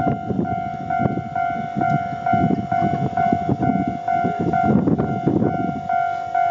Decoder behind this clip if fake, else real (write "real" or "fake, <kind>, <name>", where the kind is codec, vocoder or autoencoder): real